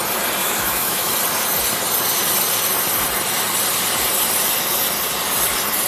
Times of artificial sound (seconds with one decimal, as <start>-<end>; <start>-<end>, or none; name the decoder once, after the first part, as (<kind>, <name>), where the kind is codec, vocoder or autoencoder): 0.4-1.1 (autoencoder, DAC-VAE)